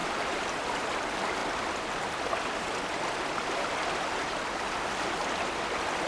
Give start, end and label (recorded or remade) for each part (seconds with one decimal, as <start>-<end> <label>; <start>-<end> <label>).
0.0-6.1 recorded